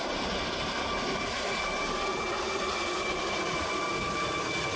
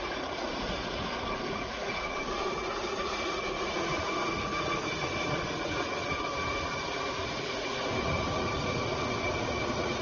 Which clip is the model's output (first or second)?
second